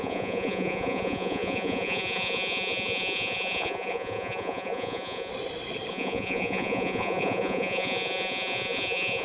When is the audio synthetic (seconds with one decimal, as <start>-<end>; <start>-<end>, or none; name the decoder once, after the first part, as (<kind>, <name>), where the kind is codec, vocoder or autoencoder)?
0.0-5.3 (vocoder, Vocos); 5.9-9.2